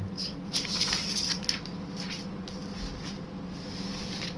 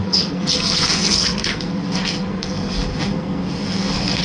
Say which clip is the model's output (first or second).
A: second